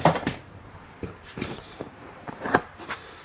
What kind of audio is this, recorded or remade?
remade